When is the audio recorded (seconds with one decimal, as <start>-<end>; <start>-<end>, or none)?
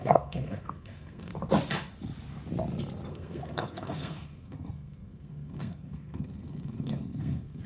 1.3-3.1